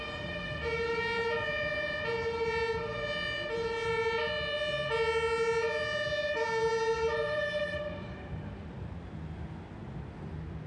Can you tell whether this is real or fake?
real